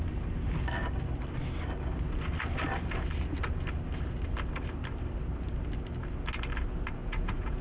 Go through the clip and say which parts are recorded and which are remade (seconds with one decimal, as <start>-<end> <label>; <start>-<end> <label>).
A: 0.0-7.0 recorded; 7.0-7.6 remade